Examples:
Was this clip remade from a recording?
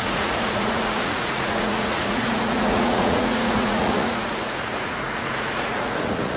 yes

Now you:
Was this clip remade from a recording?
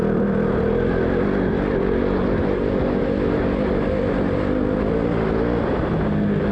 no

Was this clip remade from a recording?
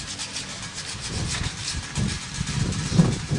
no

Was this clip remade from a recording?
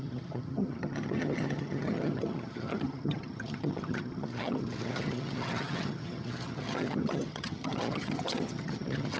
yes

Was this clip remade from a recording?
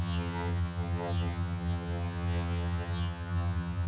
yes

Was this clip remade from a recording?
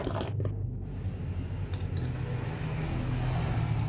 no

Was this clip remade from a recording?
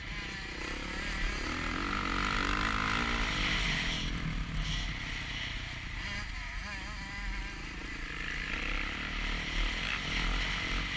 no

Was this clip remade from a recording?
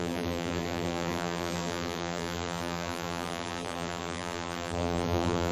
yes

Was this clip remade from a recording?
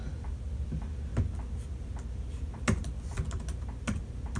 no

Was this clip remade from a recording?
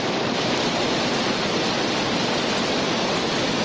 no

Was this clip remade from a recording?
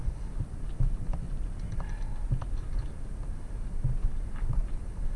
no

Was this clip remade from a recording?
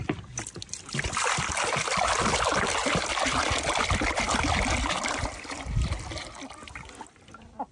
no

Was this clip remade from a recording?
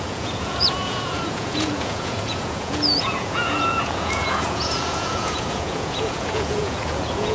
yes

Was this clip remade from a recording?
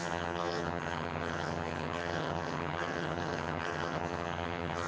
yes